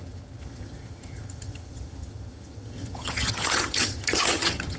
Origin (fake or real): fake